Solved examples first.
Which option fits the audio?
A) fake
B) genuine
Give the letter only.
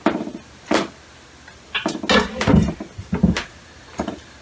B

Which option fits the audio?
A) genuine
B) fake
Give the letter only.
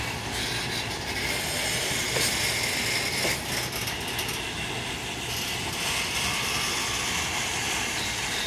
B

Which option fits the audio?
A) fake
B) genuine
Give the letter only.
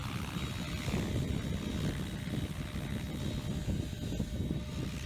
B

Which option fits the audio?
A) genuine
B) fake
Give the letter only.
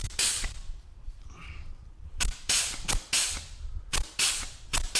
B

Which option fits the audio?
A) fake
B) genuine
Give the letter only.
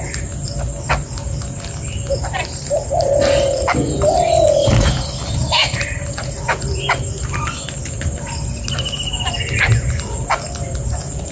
B